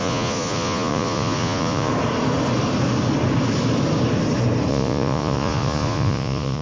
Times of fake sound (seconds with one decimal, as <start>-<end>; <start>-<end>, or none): 0.0-1.9; 4.7-6.6